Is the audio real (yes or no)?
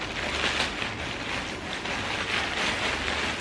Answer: yes